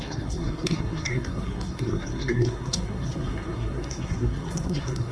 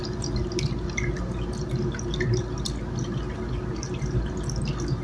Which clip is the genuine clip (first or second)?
second